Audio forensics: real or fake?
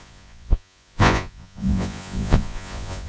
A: fake